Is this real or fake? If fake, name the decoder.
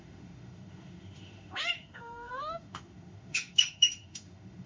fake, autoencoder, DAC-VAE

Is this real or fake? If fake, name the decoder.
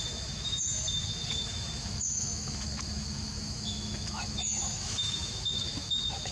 fake, autoencoder, DAC-VAE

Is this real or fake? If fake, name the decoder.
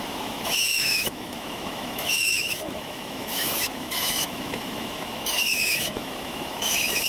fake, autoencoder, DAC-VAE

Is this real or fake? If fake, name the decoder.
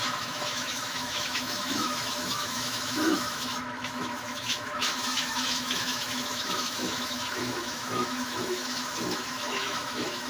fake, autoencoder, DAC-VAE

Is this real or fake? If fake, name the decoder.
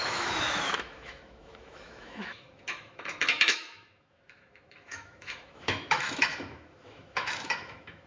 fake, autoencoder, DAC-VAE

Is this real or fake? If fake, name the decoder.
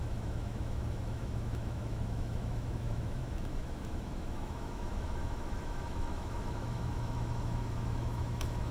fake, autoencoder, DAC-VAE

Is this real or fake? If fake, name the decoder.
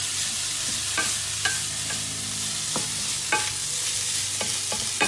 real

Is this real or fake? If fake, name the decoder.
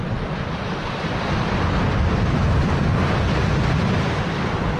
real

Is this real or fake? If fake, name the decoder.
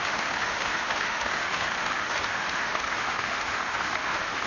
fake, autoencoder, DAC-VAE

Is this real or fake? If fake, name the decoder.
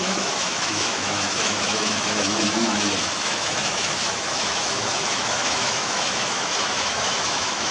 fake, autoencoder, DAC-VAE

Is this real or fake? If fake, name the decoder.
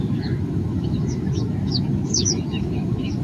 fake, autoencoder, DAC-VAE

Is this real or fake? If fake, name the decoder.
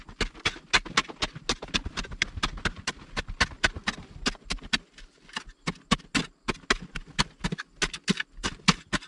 real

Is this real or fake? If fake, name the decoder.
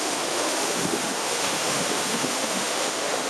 fake, autoencoder, DAC-VAE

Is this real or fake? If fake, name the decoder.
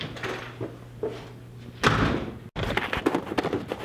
real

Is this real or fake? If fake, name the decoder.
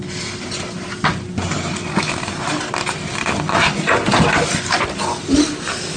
real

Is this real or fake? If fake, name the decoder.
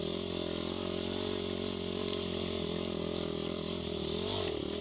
real